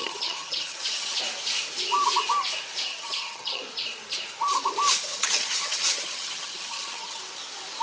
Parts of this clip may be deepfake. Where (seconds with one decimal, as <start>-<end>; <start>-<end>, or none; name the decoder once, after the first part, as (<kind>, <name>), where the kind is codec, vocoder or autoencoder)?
0.0-1.2 (vocoder, HiFi-GAN); 2.9-3.6; 5.1-7.2